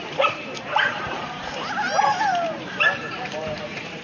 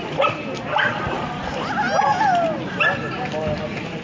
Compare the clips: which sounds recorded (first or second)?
second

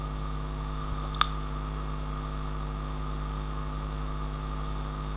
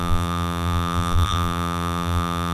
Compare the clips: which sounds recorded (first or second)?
first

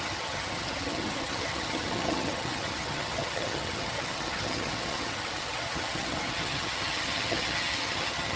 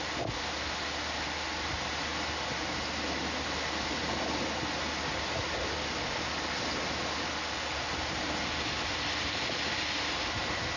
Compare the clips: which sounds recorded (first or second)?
second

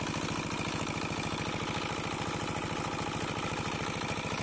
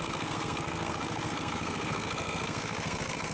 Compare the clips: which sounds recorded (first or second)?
first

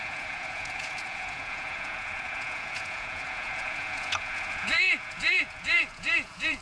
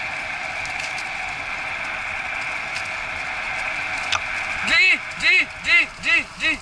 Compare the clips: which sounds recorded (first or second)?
second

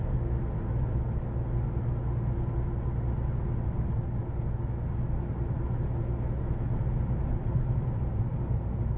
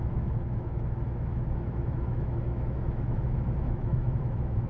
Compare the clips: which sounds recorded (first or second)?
first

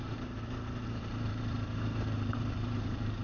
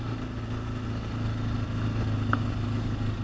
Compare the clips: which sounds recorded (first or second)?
second